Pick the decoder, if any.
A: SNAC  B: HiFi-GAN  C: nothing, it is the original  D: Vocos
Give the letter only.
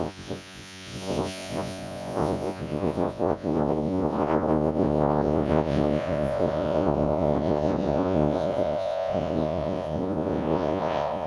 D